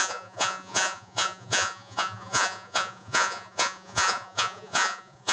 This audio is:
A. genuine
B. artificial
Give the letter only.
B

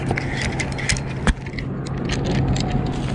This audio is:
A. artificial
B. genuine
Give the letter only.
B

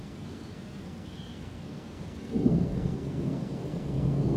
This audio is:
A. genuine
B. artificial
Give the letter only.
B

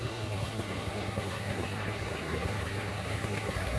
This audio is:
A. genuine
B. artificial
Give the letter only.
B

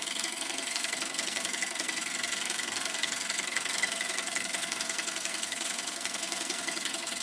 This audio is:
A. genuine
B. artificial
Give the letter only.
B